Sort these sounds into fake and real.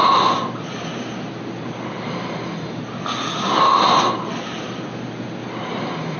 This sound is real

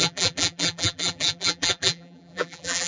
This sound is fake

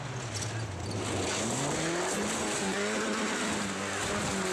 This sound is real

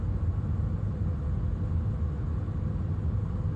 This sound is real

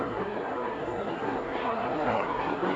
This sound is fake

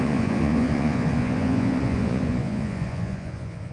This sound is fake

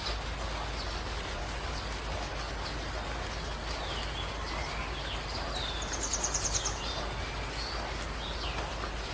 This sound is real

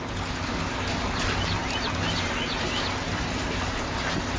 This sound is real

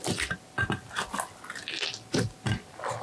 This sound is real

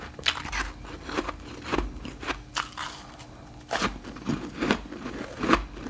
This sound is real